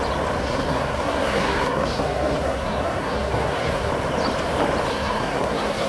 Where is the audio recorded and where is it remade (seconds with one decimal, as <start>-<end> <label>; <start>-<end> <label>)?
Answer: 0.0-0.4 recorded; 0.4-3.9 remade; 3.9-4.9 recorded; 4.9-5.9 remade